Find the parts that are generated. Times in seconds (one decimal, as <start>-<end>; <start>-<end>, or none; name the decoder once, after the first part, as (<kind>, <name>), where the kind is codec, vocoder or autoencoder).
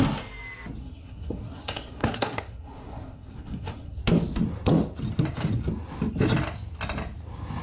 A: 0.8-4.0 (codec, SNAC)